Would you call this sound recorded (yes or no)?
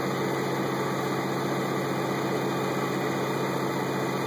yes